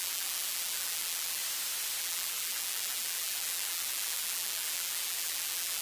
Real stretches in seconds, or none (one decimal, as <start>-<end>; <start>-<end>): 1.4-2.0